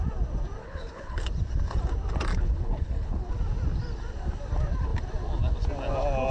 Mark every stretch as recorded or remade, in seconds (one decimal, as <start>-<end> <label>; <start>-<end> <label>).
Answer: 0.0-0.6 recorded; 0.6-1.3 remade; 1.3-2.3 recorded; 2.3-3.3 remade; 3.3-6.3 recorded